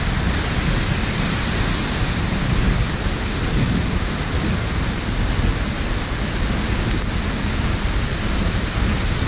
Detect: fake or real real